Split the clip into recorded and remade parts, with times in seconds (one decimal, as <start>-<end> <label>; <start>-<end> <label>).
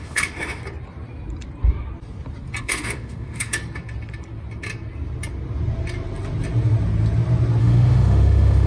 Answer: 0.0-0.6 remade; 0.6-2.6 recorded; 2.6-3.6 remade; 3.6-7.6 recorded; 7.6-8.7 remade